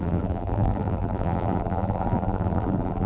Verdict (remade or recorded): remade